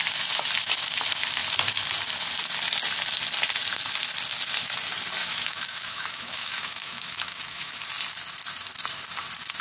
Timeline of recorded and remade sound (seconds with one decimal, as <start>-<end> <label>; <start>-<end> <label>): 0.0-5.2 recorded; 5.2-7.8 remade; 7.8-9.6 recorded